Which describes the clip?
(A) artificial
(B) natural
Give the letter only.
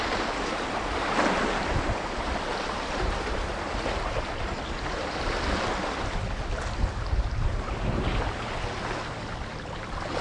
B